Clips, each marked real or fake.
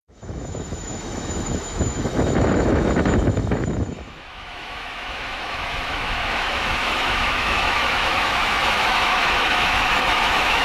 fake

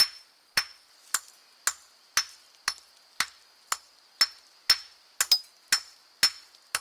real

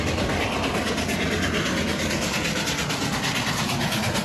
real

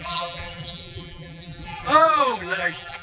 fake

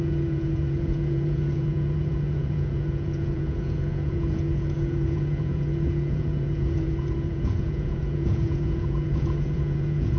fake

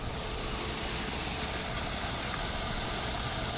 real